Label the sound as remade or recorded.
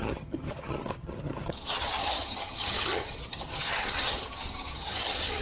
remade